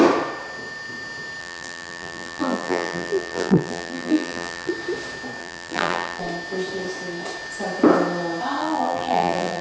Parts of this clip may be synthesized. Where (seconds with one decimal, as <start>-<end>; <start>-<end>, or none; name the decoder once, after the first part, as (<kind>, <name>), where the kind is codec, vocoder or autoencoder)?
1.4-4.7 (vocoder, BigVGAN v2); 5.4-6.2; 8.6-9.6